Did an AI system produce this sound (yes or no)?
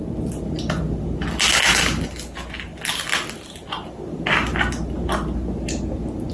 no